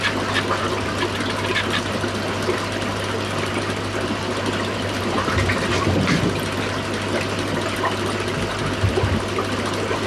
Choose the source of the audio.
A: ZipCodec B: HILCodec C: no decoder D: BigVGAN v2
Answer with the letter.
C